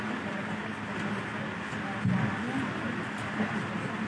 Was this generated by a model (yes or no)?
no